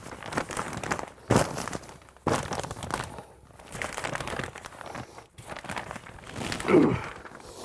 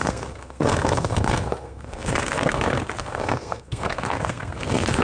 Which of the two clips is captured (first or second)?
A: first